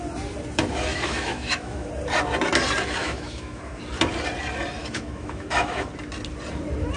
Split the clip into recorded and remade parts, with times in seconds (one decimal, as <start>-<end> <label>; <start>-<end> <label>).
0.0-0.9 recorded; 0.9-1.9 remade; 1.9-3.0 recorded; 3.0-3.8 remade; 3.8-4.8 recorded; 4.8-5.9 remade; 5.9-7.0 recorded